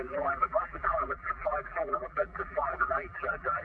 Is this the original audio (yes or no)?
no